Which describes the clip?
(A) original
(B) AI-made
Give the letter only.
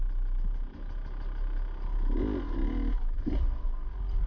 A